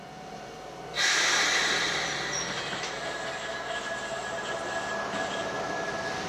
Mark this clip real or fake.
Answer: real